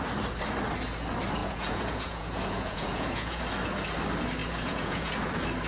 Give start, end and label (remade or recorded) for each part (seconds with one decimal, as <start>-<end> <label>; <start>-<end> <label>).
0.0-1.4 recorded; 1.4-3.4 remade; 3.4-4.4 recorded; 4.4-5.1 remade; 5.1-5.7 recorded